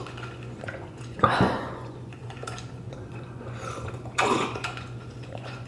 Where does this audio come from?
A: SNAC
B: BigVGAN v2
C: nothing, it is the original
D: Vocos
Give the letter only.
D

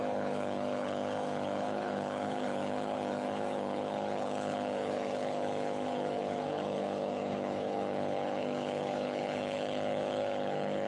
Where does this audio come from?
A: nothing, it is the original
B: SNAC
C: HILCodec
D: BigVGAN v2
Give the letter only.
C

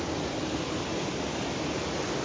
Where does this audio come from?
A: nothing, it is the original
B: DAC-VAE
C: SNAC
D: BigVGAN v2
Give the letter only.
A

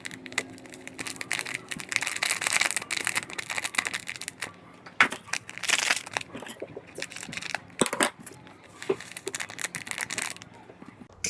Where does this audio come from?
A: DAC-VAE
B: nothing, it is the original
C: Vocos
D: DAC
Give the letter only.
B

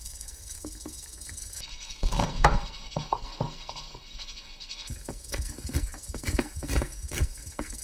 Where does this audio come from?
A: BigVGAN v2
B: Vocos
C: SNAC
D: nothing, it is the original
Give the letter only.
C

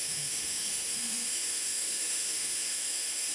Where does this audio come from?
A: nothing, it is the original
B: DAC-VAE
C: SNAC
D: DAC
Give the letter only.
B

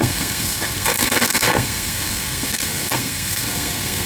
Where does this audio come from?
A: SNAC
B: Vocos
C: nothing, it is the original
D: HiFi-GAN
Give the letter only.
A